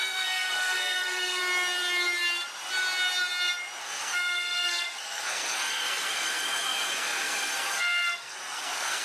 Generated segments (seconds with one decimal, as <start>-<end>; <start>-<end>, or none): 0.0-1.4; 3.8-9.0